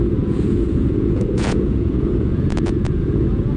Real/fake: fake